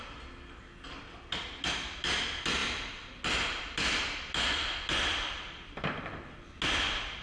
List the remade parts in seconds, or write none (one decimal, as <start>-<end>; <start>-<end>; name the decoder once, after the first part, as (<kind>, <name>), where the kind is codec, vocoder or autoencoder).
none